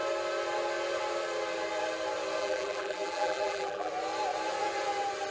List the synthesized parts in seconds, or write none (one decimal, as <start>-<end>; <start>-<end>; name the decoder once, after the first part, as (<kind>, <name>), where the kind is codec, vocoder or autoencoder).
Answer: 2.4-3.9 (vocoder, BigVGAN v2)